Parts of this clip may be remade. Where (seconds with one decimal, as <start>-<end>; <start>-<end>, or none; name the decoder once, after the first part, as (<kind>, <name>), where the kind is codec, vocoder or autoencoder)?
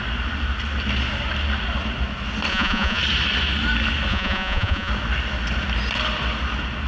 2.5-3.0 (vocoder, Vocos); 4.1-4.9